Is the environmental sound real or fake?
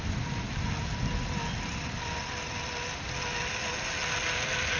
real